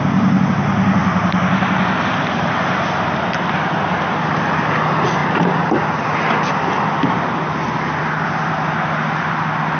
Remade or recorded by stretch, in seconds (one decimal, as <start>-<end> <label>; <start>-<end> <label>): 0.0-9.8 recorded

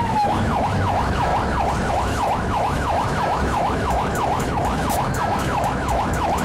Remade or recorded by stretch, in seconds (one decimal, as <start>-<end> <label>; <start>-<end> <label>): 0.0-1.3 remade; 1.3-1.9 recorded; 1.9-6.4 remade

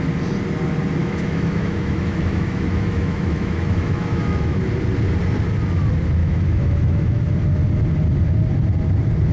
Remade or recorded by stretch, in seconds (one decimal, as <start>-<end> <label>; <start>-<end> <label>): 0.0-1.0 recorded; 1.0-4.6 remade; 4.6-6.2 recorded; 6.2-7.2 remade; 7.2-9.3 recorded

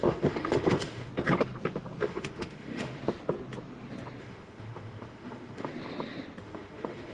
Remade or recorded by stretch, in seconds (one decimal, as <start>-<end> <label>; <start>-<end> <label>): 0.0-1.1 remade; 1.1-2.0 recorded; 2.0-3.0 remade; 3.0-4.2 recorded; 4.2-5.7 remade; 5.7-6.4 recorded; 6.4-7.1 remade

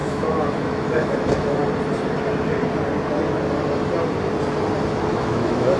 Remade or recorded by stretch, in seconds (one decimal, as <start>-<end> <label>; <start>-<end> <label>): 0.0-1.6 remade; 1.6-5.1 recorded; 5.1-5.8 remade

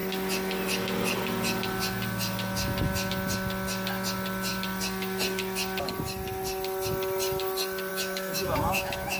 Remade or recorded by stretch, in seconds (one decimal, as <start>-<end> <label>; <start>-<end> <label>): 0.0-7.9 recorded; 7.9-9.2 remade

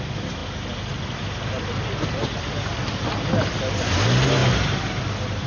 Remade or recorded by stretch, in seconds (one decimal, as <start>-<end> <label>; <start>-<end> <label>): 0.0-5.5 recorded

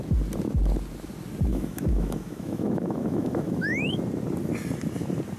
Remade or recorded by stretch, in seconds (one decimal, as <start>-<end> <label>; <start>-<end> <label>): 0.0-1.5 recorded; 1.5-4.0 remade; 4.0-5.4 recorded